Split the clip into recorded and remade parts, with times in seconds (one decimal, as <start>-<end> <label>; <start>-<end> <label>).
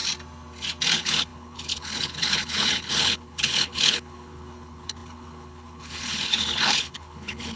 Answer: 0.0-0.9 recorded; 0.9-7.6 remade